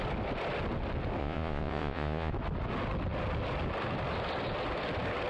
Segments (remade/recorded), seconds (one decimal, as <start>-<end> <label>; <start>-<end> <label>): 0.0-1.2 recorded; 1.2-2.3 remade; 2.3-5.3 recorded